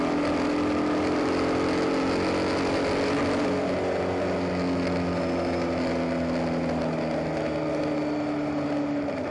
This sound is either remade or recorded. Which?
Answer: recorded